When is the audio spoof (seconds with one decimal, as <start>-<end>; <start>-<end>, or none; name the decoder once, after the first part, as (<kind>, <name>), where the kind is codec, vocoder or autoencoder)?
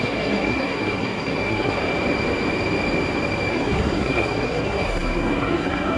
0.0-1.8 (codec, SNAC); 3.5-6.0